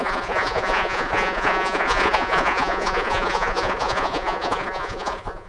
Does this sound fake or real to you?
fake